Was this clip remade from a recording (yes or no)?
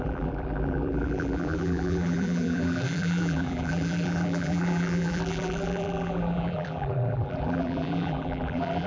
yes